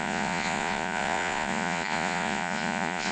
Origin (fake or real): fake